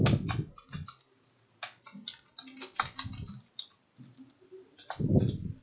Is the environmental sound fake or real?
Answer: real